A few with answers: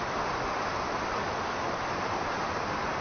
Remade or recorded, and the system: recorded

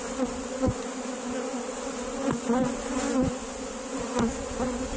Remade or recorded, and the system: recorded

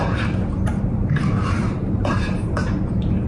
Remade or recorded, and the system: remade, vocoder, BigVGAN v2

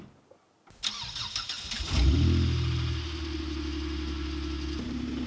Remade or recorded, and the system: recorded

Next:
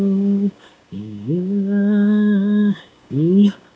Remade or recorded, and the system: remade, codec, DAC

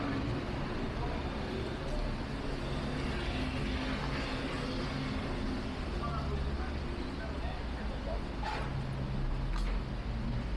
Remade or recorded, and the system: recorded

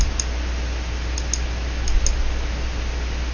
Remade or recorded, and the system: recorded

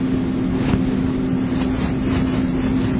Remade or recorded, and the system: recorded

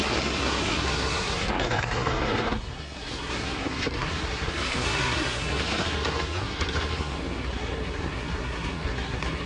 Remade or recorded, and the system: remade, codec, SNAC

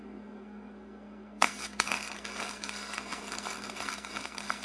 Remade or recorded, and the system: remade, codec, SNAC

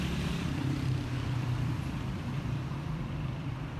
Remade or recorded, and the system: remade, vocoder, BigVGAN v2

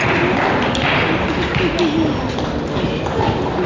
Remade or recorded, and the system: recorded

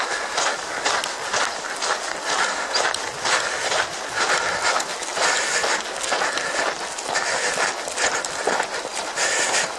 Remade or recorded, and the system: recorded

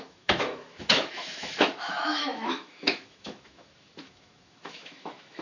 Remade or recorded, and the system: remade, autoencoder, DAC-VAE